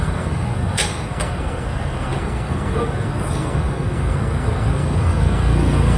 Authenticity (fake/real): fake